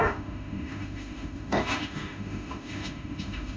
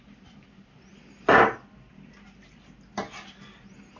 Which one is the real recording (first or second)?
second